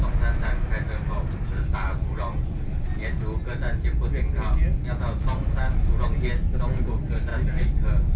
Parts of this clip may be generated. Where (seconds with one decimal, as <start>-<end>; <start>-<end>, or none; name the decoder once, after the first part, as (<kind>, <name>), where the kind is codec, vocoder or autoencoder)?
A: none